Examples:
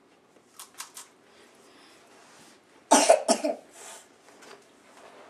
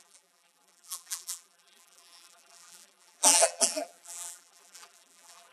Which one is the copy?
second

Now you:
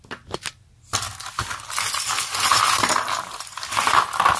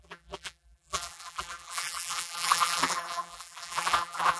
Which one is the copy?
second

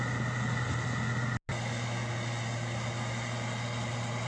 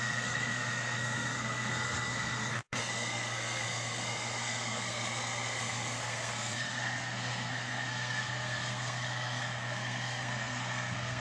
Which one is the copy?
second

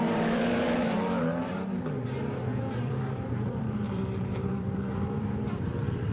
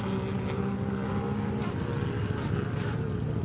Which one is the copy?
first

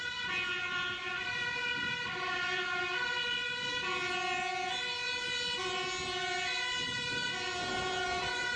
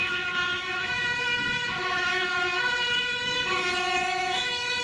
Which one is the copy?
second